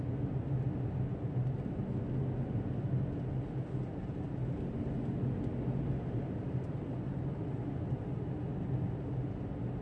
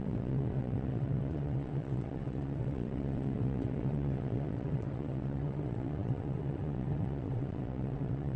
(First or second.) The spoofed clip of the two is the second